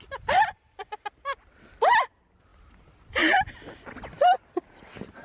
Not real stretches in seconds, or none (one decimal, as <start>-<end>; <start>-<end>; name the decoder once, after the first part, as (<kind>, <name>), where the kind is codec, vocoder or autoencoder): none